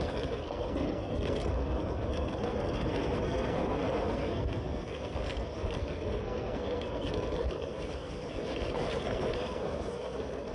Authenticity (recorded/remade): remade